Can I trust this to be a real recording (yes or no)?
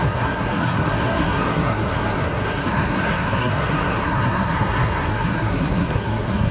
no